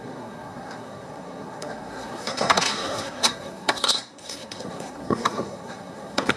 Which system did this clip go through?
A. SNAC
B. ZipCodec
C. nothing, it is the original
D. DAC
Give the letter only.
A